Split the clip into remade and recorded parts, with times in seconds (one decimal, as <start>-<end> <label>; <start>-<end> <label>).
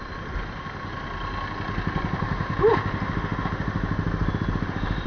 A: 0.0-5.1 recorded